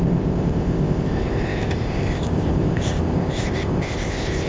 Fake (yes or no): yes